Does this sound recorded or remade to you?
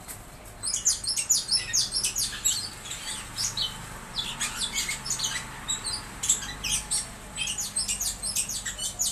recorded